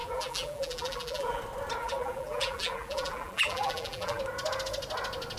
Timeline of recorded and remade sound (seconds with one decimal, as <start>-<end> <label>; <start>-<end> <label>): 0.0-1.4 remade; 1.4-1.8 recorded; 1.8-4.2 remade; 4.2-5.4 recorded